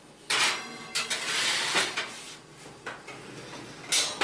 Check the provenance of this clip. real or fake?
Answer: real